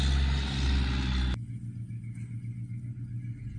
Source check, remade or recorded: recorded